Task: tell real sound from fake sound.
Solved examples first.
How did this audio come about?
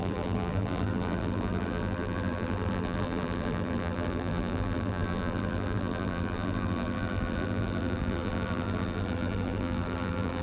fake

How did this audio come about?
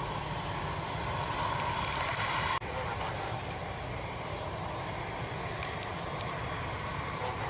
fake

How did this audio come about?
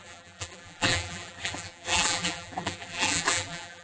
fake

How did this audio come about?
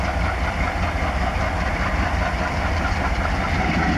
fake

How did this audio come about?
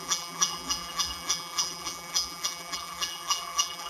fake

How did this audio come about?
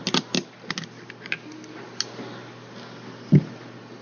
real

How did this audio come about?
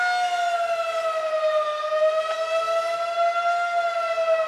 real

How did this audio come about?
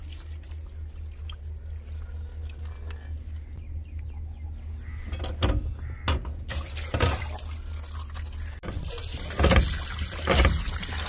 real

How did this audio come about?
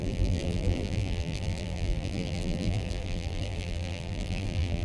fake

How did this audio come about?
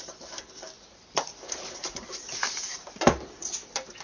fake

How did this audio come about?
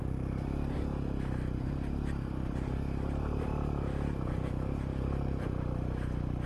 fake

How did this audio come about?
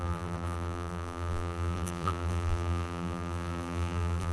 fake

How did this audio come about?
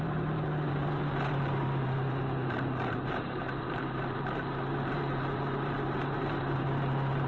fake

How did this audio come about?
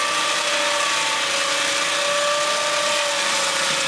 real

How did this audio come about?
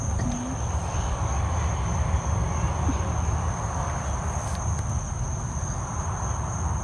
real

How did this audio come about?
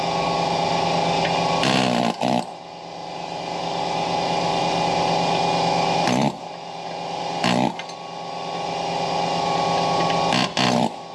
real